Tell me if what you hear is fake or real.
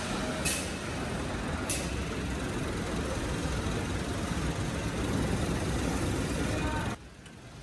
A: real